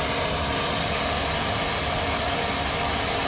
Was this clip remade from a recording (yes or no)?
no